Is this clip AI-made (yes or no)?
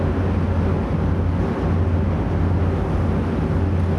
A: no